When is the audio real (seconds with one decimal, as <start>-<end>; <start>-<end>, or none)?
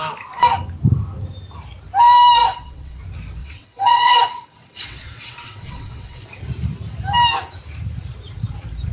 0.0-2.4; 3.0-3.4; 6.2-8.9